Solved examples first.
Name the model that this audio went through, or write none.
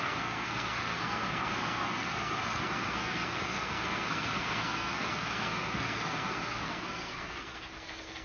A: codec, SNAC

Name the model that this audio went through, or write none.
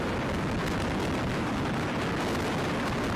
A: none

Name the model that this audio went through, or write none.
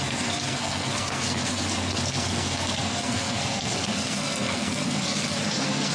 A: codec, SNAC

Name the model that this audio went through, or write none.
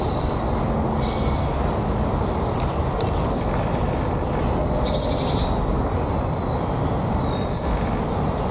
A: none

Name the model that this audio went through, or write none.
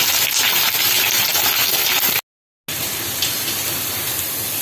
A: none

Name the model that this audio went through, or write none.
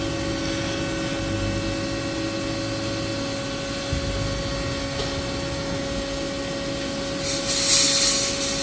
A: none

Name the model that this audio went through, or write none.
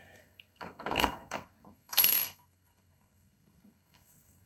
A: codec, SNAC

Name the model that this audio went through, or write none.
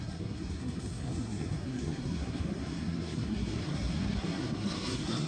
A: codec, SNAC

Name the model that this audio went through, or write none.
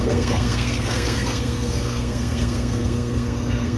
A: codec, SNAC